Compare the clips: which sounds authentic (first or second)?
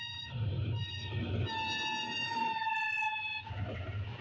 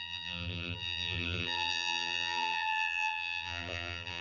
first